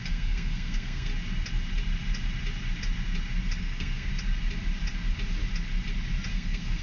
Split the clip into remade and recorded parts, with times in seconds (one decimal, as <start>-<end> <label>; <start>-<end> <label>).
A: 0.0-1.1 remade; 1.1-3.6 recorded; 3.6-4.1 remade; 4.1-6.3 recorded; 6.3-6.8 remade